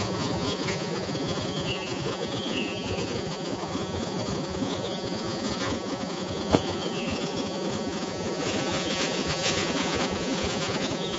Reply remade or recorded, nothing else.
remade